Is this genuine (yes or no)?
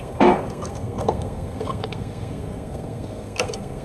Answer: no